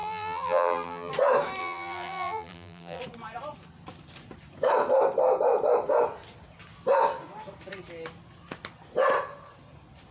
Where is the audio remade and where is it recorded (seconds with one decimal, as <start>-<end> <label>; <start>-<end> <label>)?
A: 0.0-1.1 remade; 1.1-1.6 recorded; 1.6-3.0 remade; 3.0-10.1 recorded